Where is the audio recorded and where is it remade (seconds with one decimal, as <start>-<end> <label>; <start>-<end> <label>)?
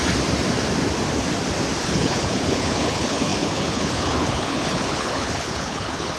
0.0-1.8 recorded; 1.8-6.2 remade